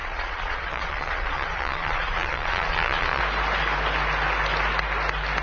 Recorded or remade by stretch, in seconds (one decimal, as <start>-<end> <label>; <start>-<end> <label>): 0.0-3.2 remade; 3.2-5.4 recorded